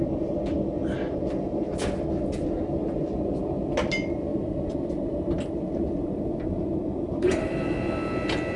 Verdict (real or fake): real